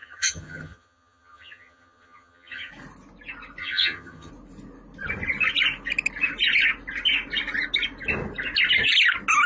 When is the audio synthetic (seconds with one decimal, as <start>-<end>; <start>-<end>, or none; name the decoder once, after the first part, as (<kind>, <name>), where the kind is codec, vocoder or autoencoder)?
0.0-2.7 (vocoder, HiFi-GAN); 3.6-4.3